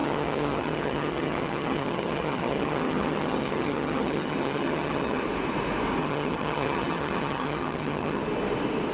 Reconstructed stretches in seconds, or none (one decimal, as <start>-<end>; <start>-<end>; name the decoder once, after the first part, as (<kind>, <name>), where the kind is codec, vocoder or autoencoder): 0.0-5.2 (vocoder, HiFi-GAN); 6.0-8.2